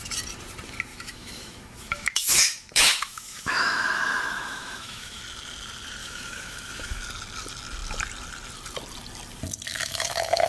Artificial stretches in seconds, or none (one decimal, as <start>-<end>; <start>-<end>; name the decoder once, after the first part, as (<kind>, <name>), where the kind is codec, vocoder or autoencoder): 0.9-5.2 (autoencoder, DAC-VAE); 6.0-7.0; 9.7-10.5